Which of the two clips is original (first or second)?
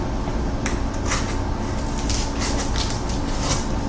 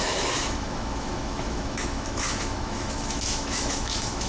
first